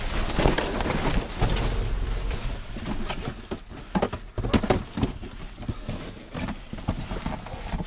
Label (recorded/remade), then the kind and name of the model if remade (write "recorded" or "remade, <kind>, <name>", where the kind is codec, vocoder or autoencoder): recorded